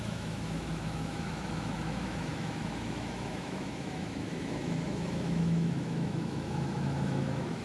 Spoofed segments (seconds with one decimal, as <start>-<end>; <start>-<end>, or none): 0.0-7.6